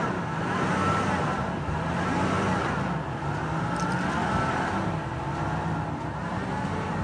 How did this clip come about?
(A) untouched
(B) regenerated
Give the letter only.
A